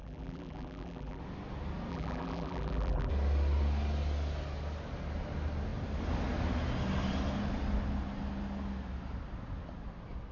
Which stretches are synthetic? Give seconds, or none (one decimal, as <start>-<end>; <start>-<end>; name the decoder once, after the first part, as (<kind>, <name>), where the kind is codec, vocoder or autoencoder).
0.0-1.2 (vocoder, BigVGAN v2); 1.9-3.1